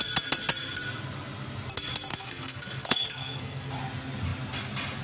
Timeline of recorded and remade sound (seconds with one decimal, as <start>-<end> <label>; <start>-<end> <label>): 0.0-2.1 recorded; 2.1-3.7 remade; 3.7-5.0 recorded